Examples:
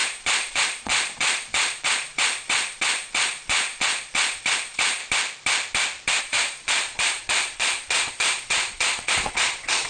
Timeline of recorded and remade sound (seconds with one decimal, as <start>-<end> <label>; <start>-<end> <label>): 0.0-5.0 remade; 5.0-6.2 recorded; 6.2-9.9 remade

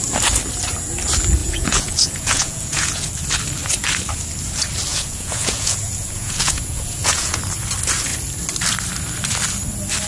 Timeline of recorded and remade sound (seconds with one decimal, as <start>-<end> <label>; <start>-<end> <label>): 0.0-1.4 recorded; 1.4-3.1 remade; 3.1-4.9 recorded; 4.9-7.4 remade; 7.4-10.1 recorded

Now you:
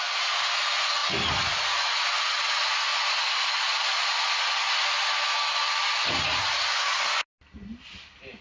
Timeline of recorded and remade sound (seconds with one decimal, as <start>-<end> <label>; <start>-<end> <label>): 0.0-8.4 recorded

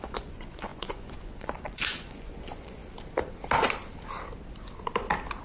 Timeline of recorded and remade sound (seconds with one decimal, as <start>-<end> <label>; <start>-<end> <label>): 0.0-2.8 remade; 2.8-5.4 recorded